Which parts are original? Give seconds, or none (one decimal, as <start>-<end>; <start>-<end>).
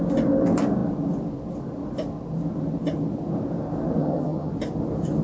0.0-4.0; 4.5-5.2